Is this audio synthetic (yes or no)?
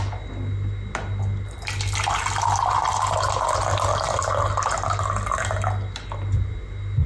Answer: no